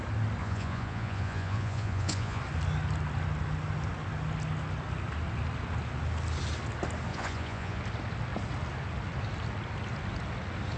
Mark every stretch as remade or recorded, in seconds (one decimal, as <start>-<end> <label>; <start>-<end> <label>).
0.0-0.4 recorded; 0.4-2.4 remade; 2.4-7.1 recorded; 7.1-7.8 remade; 7.8-10.8 recorded